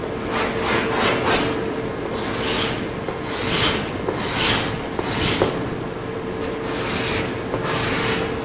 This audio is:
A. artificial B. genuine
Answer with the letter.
B